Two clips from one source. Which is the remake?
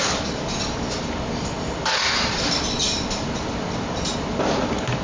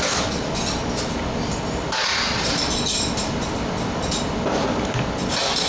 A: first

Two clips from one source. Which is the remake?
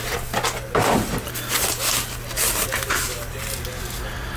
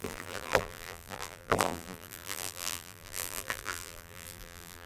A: second